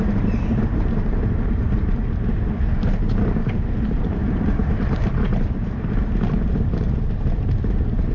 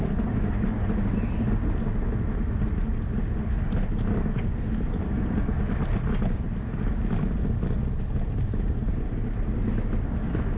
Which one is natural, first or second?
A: second